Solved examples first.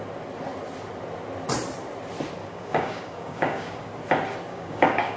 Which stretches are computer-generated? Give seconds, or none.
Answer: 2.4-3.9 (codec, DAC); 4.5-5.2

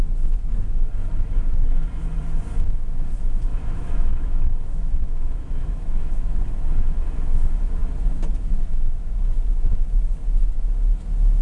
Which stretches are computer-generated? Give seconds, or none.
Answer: 3.5-6.4 (autoencoder, DAC-VAE)

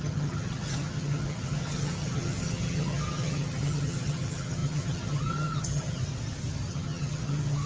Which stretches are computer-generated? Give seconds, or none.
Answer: 0.0-6.0 (vocoder, HiFi-GAN); 6.7-7.7

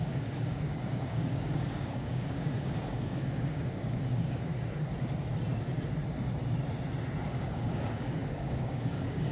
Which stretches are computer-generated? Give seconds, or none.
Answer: 0.0-4.5 (codec, DAC); 7.3-9.3

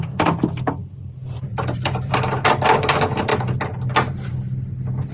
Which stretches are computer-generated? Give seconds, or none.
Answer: 0.8-2.1 (vocoder, BigVGAN v2)

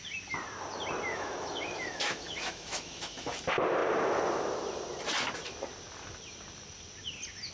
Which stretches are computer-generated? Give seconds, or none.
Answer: 1.1-3.3 (autoencoder, DAC-VAE)

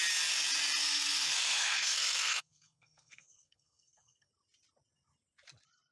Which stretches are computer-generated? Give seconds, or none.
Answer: 0.8-4.3 (codec, SNAC)